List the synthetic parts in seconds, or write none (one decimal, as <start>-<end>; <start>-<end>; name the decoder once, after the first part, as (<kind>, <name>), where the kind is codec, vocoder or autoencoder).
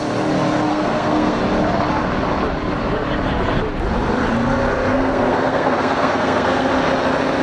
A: 0.7-1.4 (codec, SNAC); 4.9-6.7